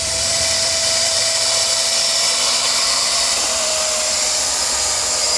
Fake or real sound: fake